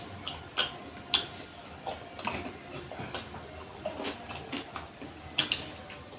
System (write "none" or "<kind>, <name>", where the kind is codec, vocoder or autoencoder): none